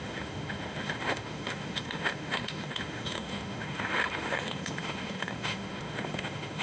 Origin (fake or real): fake